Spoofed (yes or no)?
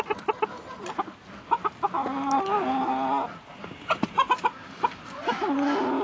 no